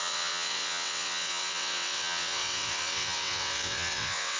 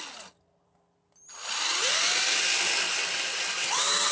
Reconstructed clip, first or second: first